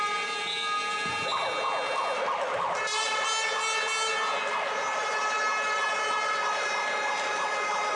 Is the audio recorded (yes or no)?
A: yes